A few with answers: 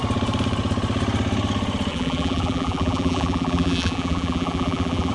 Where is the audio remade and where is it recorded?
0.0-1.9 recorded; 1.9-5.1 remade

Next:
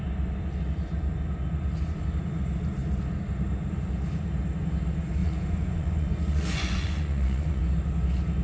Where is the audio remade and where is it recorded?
0.0-5.2 recorded; 5.2-7.6 remade; 7.6-8.4 recorded

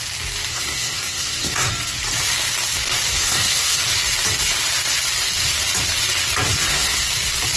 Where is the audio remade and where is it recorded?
0.0-0.5 recorded; 0.5-1.7 remade; 1.7-3.1 recorded; 3.1-3.8 remade; 3.8-6.6 recorded; 6.6-7.1 remade; 7.1-7.6 recorded

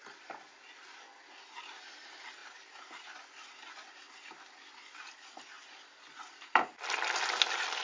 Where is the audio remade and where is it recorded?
0.0-7.8 recorded

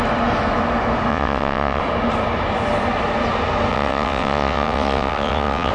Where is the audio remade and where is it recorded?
0.0-1.1 recorded; 1.1-1.8 remade; 1.8-3.7 recorded; 3.7-5.7 remade

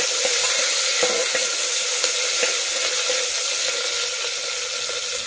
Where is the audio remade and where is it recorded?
0.0-5.3 recorded